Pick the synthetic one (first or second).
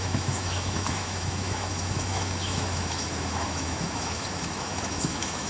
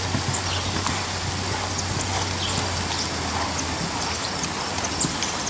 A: first